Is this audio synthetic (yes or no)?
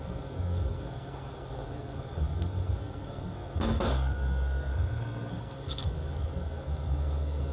yes